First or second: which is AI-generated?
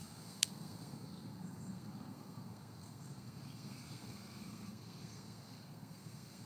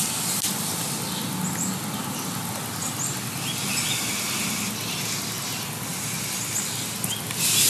first